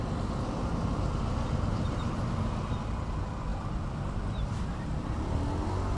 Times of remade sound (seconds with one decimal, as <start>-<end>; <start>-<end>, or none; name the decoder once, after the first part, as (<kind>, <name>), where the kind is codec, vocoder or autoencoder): 1.7-2.2 (vocoder, BigVGAN v2); 3.5-4.9